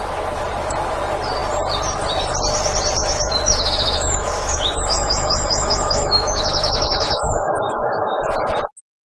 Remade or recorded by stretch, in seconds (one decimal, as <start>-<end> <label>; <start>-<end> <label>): 0.0-3.0 recorded; 3.0-8.2 remade; 8.2-9.1 recorded